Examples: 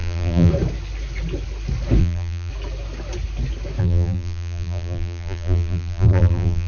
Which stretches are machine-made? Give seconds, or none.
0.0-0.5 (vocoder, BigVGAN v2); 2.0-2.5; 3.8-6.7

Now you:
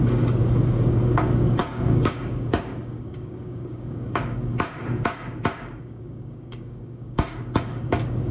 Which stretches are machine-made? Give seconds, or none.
0.0-8.3 (codec, DAC)

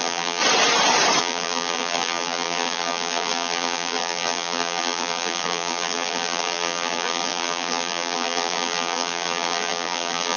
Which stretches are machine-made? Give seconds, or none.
0.0-0.4 (vocoder, BigVGAN v2); 1.2-10.4

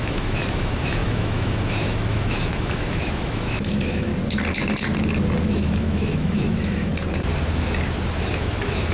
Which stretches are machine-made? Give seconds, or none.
0.0-4.1 (autoencoder, DAC-VAE); 5.5-6.9; 8.4-8.9